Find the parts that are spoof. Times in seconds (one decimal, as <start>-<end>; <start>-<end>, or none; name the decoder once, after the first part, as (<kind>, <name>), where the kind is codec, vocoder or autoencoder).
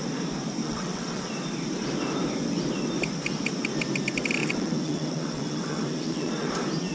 0.6-1.3 (vocoder, WaveNeXt); 4.4-6.5